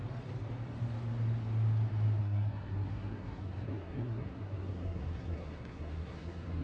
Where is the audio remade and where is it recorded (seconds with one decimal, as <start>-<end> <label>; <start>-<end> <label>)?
0.0-2.2 recorded; 2.2-6.6 remade